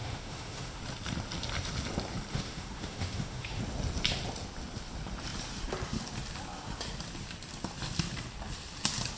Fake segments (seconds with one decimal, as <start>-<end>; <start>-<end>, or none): 0.0-0.8; 2.3-3.6